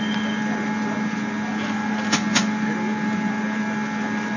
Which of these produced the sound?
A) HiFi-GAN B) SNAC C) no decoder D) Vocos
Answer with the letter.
C